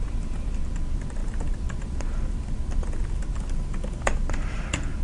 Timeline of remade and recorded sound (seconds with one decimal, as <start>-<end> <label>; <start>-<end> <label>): 0.0-0.7 remade; 0.7-5.0 recorded